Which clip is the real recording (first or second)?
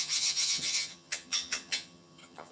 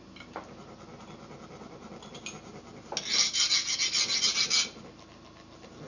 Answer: second